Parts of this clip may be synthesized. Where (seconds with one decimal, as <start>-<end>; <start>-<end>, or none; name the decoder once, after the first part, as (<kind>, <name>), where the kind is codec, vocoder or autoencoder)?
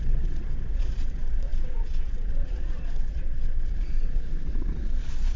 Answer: 0.0-5.4 (vocoder, Vocos)